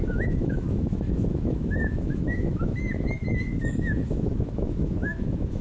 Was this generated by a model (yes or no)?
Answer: yes